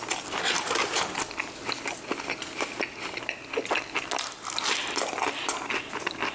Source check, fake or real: real